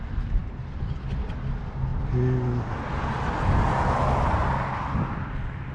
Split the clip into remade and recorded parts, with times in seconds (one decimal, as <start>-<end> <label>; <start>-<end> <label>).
0.0-5.7 recorded